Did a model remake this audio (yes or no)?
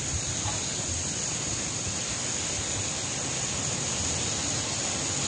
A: no